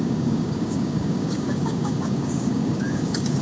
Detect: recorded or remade remade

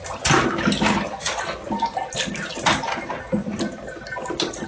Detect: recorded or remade recorded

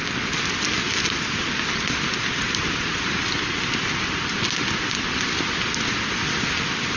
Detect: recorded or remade recorded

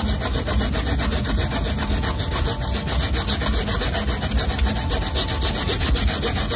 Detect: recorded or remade recorded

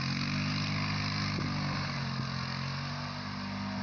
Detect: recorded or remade recorded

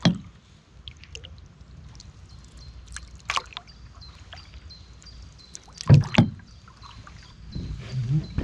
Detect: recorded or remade recorded